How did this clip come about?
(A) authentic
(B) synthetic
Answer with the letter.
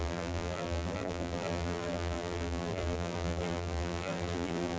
B